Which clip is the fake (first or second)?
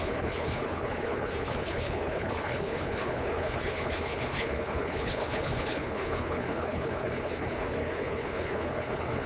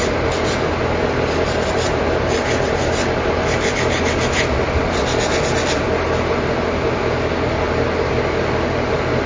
first